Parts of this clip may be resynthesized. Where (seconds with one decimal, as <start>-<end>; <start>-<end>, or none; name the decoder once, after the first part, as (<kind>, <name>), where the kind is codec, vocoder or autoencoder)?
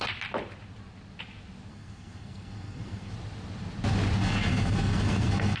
1.7-3.1 (codec, SNAC); 4.2-5.6